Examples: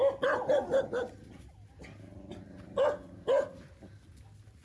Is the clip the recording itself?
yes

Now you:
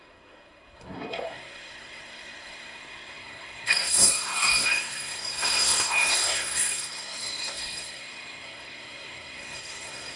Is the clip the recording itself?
no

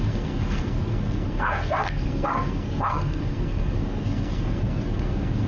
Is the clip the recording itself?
no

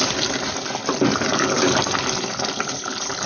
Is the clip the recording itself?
yes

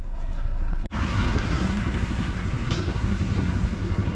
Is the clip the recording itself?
no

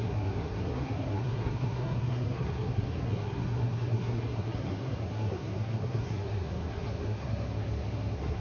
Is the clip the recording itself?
no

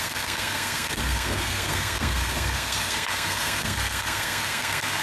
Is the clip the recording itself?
no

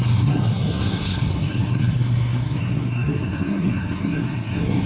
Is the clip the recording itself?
no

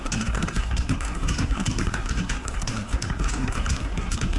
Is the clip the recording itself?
no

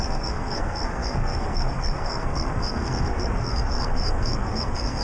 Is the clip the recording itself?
no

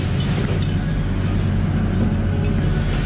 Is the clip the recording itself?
yes